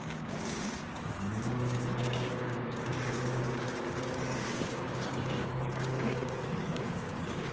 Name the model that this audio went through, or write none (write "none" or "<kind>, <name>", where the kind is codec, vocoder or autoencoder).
codec, DAC